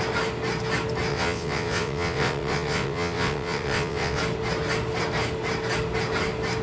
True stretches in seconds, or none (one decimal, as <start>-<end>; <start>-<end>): 0.0-1.1; 4.2-6.6